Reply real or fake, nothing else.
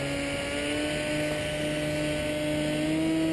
real